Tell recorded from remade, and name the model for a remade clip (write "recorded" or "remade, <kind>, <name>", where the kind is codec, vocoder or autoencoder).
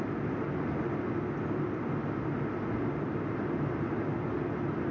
recorded